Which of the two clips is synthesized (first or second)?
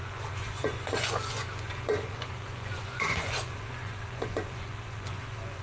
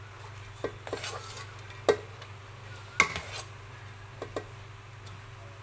first